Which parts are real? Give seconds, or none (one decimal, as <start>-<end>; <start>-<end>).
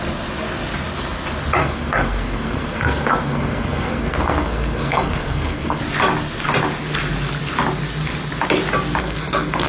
0.0-1.6; 5.8-9.0